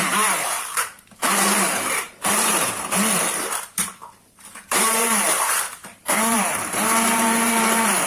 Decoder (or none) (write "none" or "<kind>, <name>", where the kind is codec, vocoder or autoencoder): vocoder, BigVGAN v2